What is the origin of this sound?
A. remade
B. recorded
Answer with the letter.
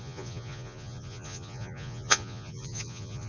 A